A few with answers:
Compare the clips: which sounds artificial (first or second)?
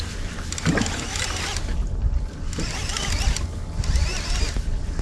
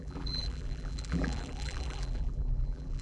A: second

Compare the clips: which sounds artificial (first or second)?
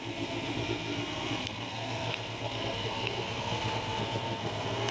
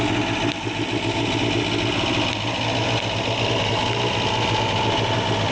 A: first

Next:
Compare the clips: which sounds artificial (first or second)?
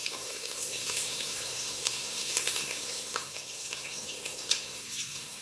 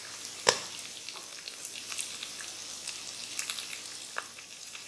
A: first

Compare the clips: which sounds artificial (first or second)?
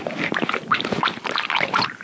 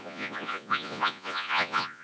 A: second